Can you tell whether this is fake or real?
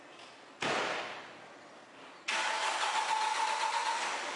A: real